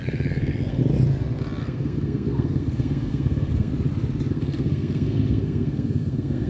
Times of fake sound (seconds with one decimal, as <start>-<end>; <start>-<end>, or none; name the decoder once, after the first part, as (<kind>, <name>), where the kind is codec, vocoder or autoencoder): 0.0-0.8 (codec, SNAC); 1.6-3.7; 4.3-6.5